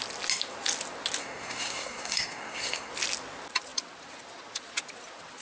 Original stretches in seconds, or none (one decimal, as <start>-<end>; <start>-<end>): 0.0-1.2; 2.9-5.4